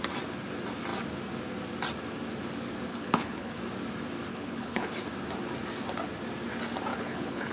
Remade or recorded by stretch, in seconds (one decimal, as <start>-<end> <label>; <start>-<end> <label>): 0.0-2.9 recorded; 2.9-3.6 remade; 3.6-4.3 recorded; 4.3-4.9 remade; 4.9-6.9 recorded; 6.9-7.5 remade